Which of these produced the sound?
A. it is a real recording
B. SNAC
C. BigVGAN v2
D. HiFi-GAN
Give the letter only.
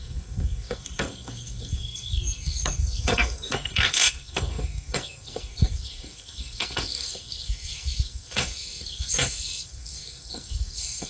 B